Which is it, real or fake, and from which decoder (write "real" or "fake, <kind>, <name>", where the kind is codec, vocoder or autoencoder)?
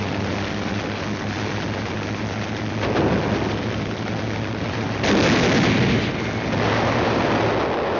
real